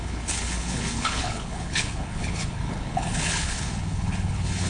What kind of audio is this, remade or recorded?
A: remade